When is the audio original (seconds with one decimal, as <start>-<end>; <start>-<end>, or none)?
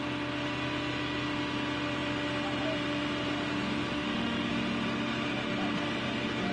0.0-3.9; 4.5-6.5